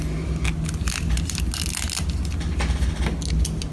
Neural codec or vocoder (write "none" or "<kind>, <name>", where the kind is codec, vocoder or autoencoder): none